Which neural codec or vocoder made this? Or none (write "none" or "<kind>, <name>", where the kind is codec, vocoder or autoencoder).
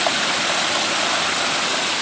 none